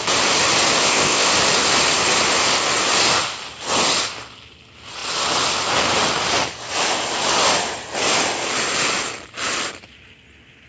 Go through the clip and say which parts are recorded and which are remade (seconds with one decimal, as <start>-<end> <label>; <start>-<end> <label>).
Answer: 0.0-0.8 recorded; 0.8-1.3 remade; 1.3-10.7 recorded